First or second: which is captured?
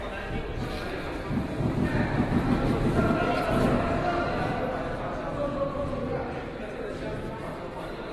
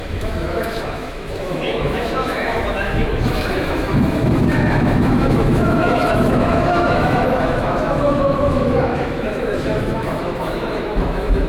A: first